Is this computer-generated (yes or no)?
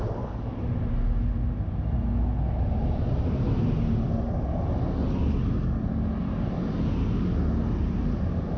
no